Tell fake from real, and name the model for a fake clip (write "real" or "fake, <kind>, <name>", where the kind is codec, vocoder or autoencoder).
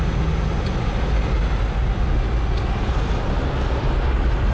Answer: real